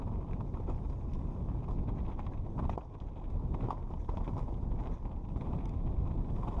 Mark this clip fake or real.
real